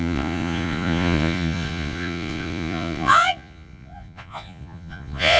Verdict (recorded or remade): remade